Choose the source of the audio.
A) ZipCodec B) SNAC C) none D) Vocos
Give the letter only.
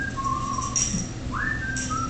C